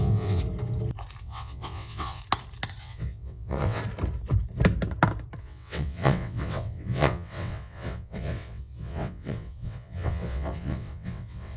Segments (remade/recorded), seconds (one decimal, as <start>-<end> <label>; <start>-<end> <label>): 0.0-0.4 remade; 0.4-1.2 recorded; 1.2-2.2 remade; 2.2-2.8 recorded; 2.8-3.8 remade; 3.8-5.4 recorded; 5.4-11.6 remade